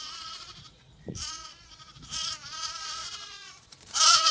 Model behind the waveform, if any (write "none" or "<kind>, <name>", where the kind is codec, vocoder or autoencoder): vocoder, Vocos